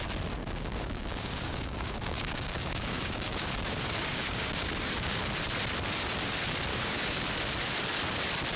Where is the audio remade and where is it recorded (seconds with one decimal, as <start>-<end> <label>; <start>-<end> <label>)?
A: 0.0-0.4 recorded; 0.4-5.2 remade; 5.2-6.7 recorded; 6.7-7.2 remade; 7.2-8.6 recorded